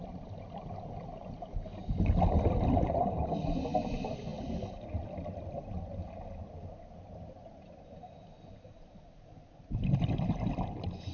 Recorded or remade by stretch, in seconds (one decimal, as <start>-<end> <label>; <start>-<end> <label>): 0.0-11.1 recorded